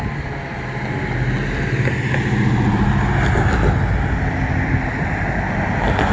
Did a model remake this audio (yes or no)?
no